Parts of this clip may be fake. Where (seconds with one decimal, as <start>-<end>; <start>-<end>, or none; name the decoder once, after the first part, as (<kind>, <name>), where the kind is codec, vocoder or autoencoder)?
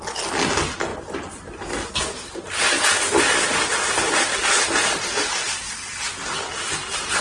0.9-2.5 (vocoder, BigVGAN v2); 4.3-5.9